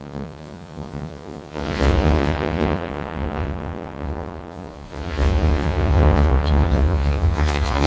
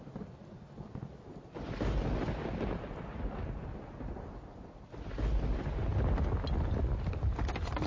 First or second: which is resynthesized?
first